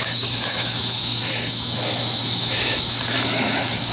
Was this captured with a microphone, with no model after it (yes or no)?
no